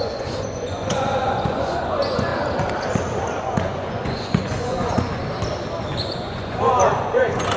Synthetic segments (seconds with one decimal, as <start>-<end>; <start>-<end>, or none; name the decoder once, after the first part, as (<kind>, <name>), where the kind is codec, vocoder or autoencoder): 0.0-2.3 (vocoder, Vocos); 3.4-5.2; 6.0-7.6